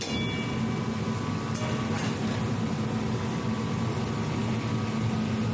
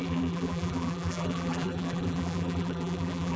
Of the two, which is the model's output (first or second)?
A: second